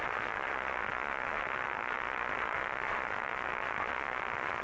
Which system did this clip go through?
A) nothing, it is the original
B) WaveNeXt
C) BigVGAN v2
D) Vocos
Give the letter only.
D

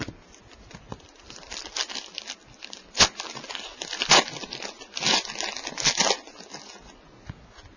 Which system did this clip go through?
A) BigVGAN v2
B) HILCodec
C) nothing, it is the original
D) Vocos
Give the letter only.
C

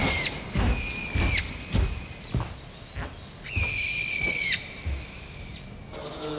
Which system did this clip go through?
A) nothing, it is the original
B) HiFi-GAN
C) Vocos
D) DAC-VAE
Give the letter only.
A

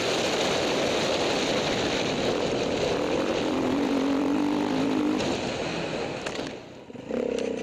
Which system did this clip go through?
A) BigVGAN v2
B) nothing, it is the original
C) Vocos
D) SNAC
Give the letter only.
B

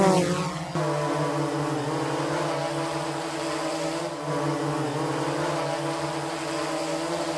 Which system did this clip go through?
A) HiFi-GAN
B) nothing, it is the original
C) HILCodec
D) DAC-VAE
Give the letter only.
B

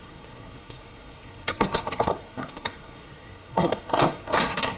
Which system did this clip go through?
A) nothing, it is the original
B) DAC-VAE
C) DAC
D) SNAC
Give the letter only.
D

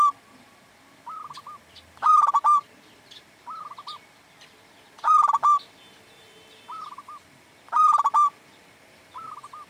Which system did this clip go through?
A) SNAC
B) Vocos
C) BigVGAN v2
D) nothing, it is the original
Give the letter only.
C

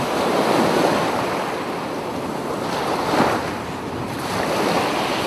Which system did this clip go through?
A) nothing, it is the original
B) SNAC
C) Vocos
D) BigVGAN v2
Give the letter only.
A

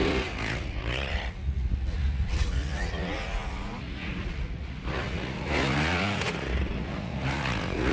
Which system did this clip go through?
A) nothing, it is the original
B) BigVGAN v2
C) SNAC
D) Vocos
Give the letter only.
D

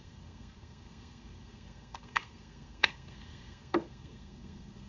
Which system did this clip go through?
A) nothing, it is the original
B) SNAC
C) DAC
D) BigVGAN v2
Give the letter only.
B